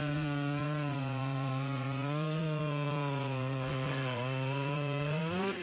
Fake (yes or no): yes